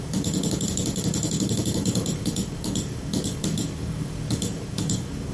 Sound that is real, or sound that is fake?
fake